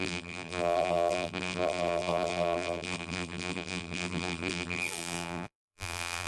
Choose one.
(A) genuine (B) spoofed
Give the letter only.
B